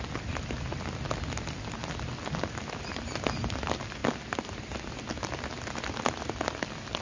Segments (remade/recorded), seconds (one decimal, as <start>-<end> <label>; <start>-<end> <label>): 0.0-7.0 recorded